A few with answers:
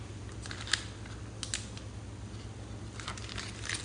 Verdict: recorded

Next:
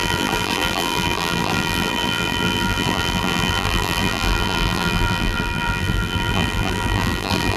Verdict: remade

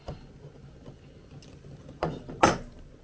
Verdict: recorded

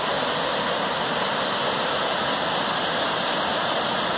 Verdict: recorded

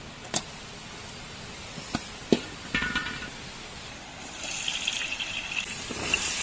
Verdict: recorded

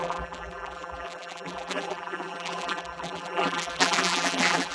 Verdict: remade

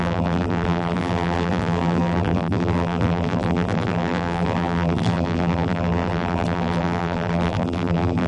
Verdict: remade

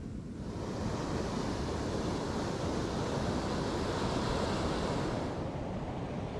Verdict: recorded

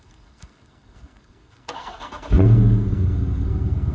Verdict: remade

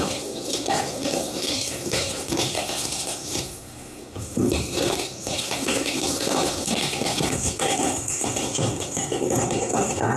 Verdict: remade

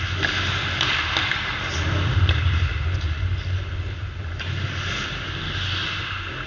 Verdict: recorded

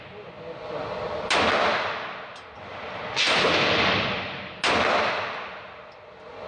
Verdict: recorded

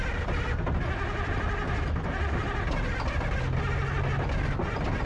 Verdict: recorded